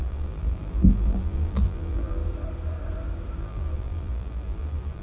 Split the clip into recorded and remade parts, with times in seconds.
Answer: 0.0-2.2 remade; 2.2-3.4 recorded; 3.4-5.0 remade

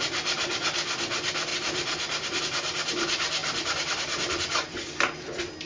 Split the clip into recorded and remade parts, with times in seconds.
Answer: 0.0-1.5 recorded; 1.5-2.4 remade; 2.4-3.4 recorded; 3.4-4.3 remade; 4.3-5.7 recorded